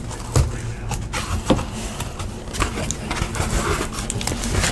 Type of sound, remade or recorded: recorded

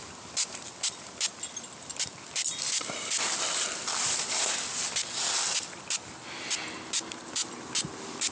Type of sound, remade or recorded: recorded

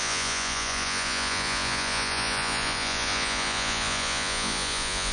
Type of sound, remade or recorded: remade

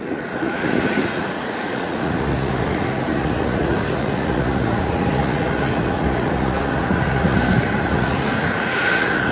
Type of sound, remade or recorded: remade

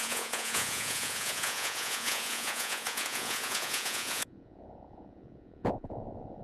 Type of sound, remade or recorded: remade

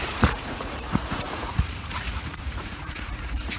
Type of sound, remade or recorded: remade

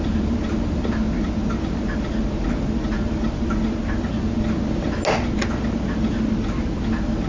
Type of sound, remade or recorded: recorded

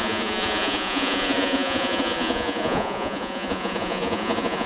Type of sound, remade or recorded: remade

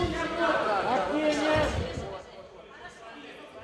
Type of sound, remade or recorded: recorded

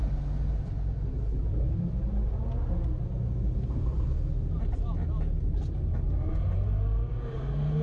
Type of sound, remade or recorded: recorded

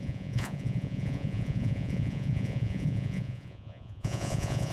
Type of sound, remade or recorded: remade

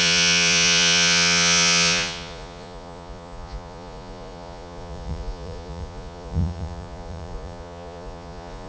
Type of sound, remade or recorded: remade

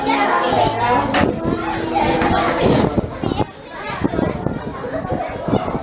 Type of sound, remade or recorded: recorded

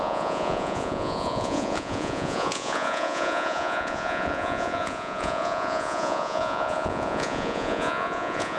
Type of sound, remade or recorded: remade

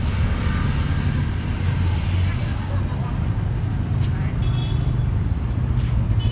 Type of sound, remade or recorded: recorded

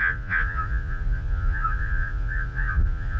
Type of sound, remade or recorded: remade